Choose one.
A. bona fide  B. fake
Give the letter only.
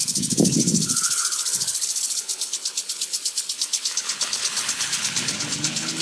B